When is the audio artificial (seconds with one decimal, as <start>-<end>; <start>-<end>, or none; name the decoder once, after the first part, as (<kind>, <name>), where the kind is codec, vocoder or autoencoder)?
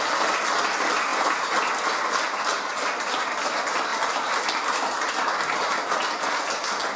none